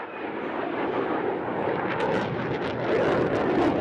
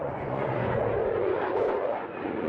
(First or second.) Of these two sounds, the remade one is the second